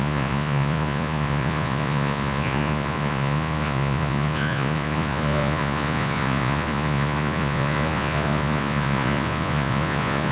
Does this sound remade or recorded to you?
remade